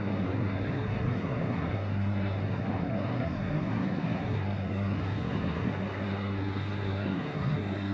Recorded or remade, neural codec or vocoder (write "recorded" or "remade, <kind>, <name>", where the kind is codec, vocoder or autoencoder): remade, codec, SNAC